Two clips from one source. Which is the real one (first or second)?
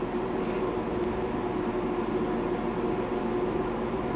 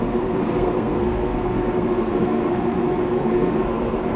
first